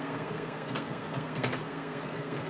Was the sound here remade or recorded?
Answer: remade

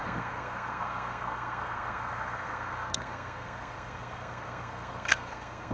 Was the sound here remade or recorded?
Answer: remade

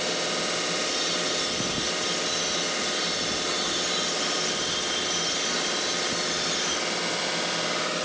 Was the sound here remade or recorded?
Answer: recorded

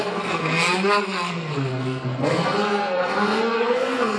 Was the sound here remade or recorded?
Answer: remade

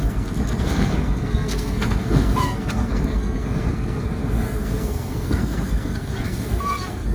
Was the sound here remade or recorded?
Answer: remade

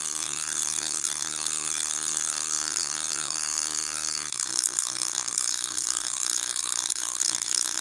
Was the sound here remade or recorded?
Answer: remade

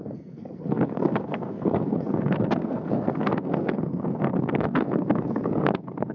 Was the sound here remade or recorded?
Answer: remade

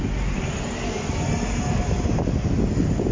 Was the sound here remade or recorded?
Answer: recorded